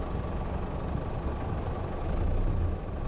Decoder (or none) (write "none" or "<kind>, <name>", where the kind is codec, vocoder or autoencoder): none